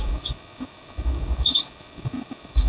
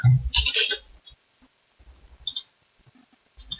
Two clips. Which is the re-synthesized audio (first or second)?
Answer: first